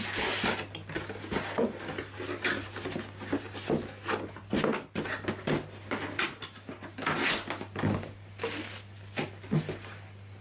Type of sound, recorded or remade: recorded